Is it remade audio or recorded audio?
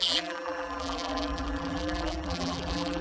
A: remade